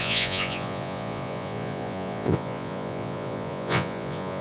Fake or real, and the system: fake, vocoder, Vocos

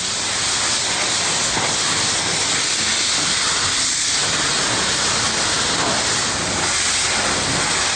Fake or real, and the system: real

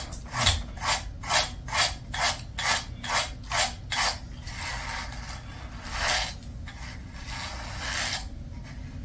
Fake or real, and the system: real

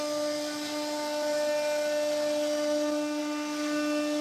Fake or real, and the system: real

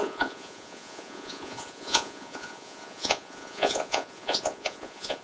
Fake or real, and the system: fake, vocoder, Vocos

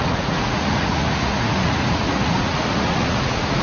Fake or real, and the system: fake, vocoder, Vocos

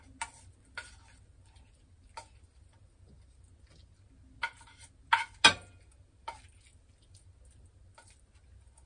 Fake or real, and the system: real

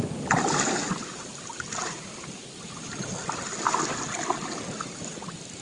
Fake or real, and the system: real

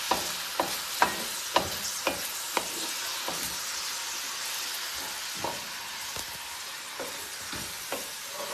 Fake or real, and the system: real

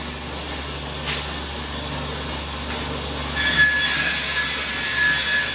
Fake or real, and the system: real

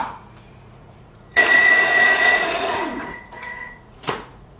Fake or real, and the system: fake, vocoder, Vocos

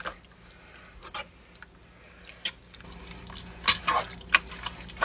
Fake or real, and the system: real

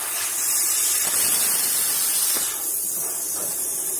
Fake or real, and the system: real